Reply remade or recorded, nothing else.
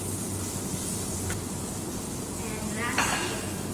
recorded